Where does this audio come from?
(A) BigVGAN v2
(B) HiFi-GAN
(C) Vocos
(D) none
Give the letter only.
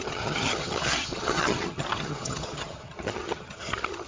B